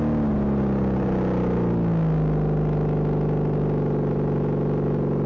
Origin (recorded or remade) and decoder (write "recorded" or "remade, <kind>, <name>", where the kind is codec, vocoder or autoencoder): recorded